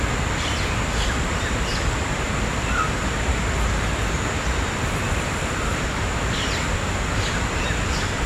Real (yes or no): no